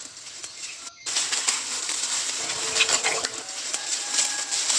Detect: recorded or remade recorded